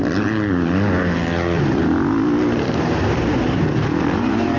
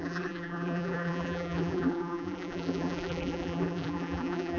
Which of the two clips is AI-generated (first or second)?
second